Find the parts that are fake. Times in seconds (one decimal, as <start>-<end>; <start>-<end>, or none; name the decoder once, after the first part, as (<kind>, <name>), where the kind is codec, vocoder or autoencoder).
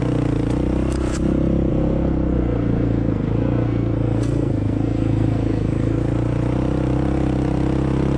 1.7-6.0 (codec, SNAC)